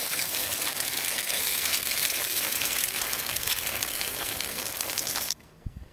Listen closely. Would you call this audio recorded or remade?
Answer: remade